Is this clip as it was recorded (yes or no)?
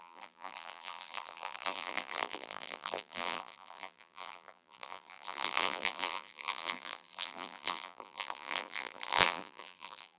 no